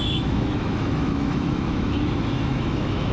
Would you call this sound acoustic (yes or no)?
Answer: no